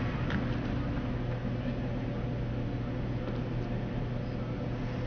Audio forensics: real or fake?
real